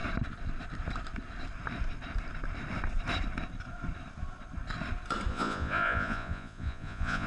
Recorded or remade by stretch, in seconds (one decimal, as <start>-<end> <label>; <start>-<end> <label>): 0.0-5.3 recorded; 5.3-7.3 remade